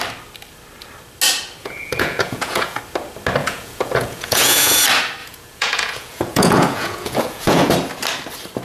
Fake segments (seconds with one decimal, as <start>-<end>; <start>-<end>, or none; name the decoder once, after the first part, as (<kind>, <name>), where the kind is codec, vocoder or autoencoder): 1.6-2.8 (vocoder, Vocos); 3.4-4.8; 5.2-7.7

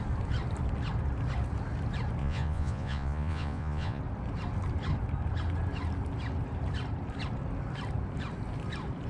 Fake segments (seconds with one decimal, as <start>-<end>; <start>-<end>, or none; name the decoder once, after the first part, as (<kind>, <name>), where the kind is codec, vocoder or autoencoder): 2.2-4.0 (vocoder, Vocos)

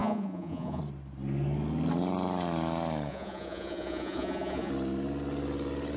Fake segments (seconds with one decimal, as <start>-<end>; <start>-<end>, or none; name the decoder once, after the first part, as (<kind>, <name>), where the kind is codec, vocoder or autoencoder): 0.0-0.8 (vocoder, Vocos); 3.1-4.7

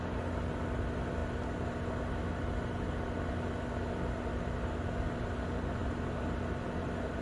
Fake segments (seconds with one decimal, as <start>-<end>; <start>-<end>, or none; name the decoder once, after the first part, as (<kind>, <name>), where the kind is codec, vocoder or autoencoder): none

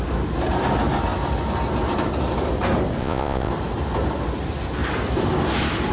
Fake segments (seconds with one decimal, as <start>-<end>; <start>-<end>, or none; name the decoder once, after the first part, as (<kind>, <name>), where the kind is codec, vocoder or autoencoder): 3.0-3.5 (vocoder, Vocos)

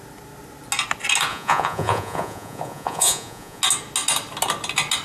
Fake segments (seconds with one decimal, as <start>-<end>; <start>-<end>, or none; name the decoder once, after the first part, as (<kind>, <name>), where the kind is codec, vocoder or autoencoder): 1.3-3.6 (vocoder, Vocos)

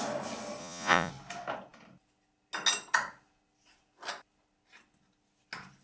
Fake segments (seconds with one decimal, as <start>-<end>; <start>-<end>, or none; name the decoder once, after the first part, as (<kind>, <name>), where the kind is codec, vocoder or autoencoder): 0.6-1.1 (vocoder, Vocos)